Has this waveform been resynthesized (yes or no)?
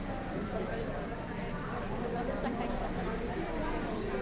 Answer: no